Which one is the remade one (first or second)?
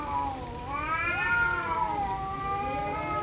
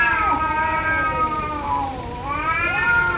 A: second